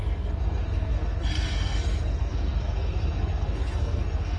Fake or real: fake